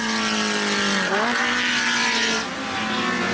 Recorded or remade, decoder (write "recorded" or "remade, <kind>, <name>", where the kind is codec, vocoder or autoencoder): recorded